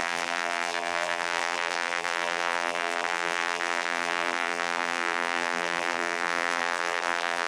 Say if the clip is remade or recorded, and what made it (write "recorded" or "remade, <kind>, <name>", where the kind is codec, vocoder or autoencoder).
remade, vocoder, BigVGAN v2